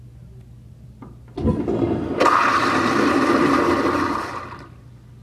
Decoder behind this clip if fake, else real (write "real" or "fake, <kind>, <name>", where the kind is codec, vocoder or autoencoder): real